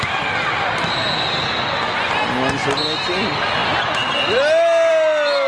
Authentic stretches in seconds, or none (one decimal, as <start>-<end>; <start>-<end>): 0.0-5.5